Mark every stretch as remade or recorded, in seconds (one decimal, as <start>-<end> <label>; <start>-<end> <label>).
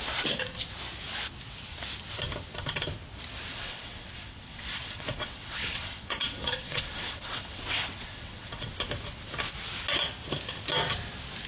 0.0-3.5 recorded; 3.5-8.7 remade; 8.7-11.5 recorded